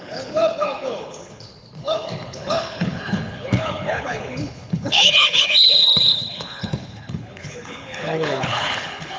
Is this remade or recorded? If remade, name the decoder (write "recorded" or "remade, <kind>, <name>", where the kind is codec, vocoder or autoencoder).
remade, codec, HILCodec